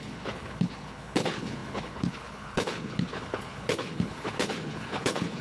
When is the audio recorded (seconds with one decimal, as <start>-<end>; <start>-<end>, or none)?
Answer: none